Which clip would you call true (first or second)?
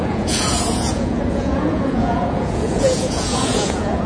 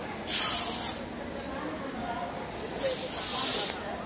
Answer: second